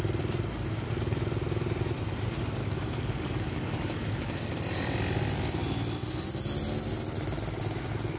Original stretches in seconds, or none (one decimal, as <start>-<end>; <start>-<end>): 0.0-2.6; 4.4-8.2